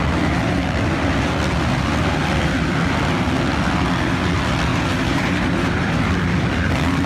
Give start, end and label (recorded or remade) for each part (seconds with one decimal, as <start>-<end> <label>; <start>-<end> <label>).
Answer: 0.0-4.7 recorded; 4.7-6.1 remade; 6.1-7.1 recorded